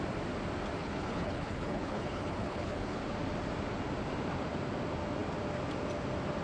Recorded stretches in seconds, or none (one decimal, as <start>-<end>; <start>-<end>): 0.0-0.8; 3.0-6.4